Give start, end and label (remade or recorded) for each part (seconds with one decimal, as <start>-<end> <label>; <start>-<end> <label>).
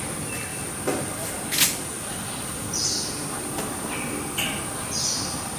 0.0-5.6 recorded